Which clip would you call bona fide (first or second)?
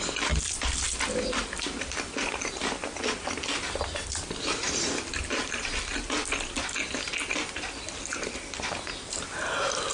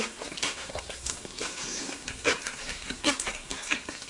first